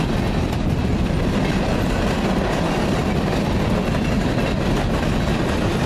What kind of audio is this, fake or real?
real